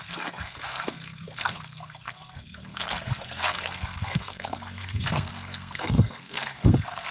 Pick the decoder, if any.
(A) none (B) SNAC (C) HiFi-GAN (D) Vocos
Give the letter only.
B